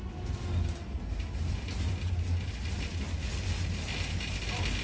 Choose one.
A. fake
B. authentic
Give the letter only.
B